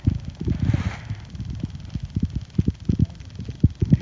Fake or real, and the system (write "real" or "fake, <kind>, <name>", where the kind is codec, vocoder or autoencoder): real